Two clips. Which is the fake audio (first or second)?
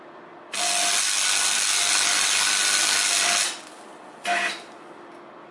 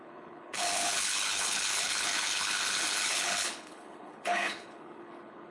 second